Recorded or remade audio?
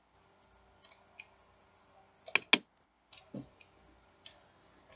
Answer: recorded